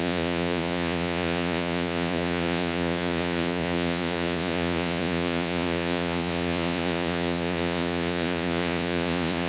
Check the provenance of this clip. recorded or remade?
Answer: remade